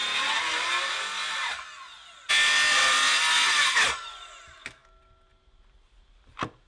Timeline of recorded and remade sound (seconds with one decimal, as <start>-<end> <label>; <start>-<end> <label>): 0.0-6.7 recorded